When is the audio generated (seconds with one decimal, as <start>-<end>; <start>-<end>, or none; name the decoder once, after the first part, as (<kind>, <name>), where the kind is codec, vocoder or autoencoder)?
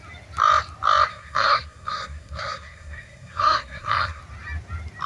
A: 1.1-4.2 (codec, SNAC)